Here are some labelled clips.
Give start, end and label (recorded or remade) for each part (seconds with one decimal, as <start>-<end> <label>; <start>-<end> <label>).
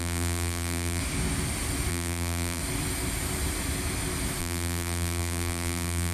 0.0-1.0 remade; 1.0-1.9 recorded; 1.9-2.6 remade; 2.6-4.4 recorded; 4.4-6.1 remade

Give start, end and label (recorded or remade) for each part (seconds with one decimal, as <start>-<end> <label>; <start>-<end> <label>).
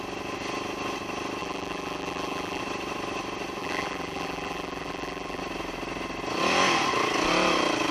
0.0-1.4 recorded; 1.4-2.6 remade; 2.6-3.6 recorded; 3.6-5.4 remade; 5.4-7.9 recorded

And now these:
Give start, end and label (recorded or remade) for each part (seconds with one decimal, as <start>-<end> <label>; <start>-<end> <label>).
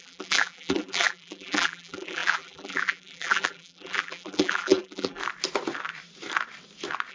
0.0-5.2 remade; 5.2-7.1 recorded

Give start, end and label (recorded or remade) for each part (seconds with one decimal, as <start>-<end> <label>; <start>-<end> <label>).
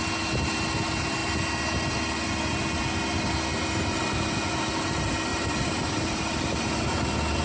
0.0-5.3 recorded; 5.3-6.4 remade; 6.4-7.4 recorded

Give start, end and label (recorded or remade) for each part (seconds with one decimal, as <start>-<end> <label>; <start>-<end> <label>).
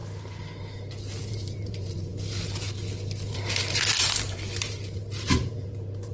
0.0-1.2 recorded; 1.2-2.1 remade; 2.1-3.3 recorded; 3.3-6.1 remade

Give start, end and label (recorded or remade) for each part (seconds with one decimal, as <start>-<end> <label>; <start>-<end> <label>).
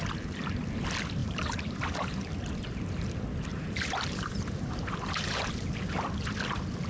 0.0-1.2 recorded; 1.2-2.5 remade; 2.5-3.5 recorded; 3.5-5.5 remade; 5.5-6.9 recorded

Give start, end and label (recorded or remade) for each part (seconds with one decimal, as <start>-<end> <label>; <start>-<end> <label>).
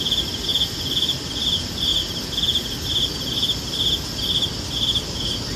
0.0-1.9 remade; 1.9-5.6 recorded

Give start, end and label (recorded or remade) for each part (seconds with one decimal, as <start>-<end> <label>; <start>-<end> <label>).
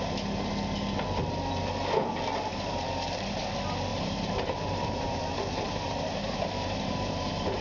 0.0-2.5 recorded; 2.5-3.4 remade; 3.4-3.9 recorded; 3.9-7.6 remade